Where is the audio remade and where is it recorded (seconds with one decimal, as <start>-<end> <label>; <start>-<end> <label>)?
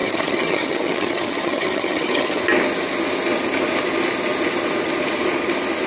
0.0-2.4 remade; 2.4-5.9 recorded